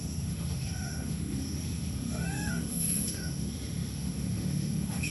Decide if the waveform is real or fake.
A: fake